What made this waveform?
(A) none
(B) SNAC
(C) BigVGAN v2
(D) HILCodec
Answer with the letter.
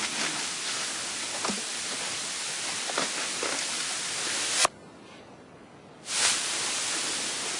A